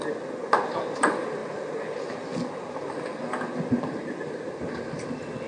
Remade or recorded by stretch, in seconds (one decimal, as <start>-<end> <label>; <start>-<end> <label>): 0.0-5.5 recorded